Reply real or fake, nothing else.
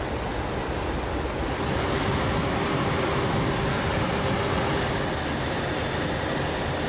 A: real